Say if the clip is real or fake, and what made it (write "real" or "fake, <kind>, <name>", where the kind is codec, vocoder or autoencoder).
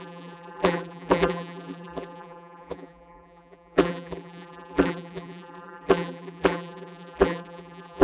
fake, vocoder, BigVGAN v2